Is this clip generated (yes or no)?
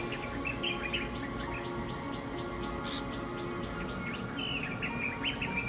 no